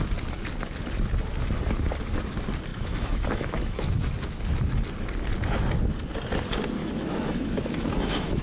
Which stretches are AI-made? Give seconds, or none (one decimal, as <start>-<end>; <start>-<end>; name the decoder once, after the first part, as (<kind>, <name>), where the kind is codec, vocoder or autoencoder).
2.7-3.8 (autoencoder, DAC-VAE); 6.8-8.4